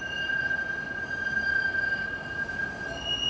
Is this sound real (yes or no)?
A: yes